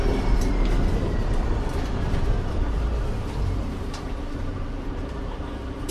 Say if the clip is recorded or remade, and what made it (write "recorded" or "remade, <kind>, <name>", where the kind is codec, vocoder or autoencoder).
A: remade, vocoder, BigVGAN v2